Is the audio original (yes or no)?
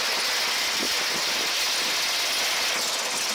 yes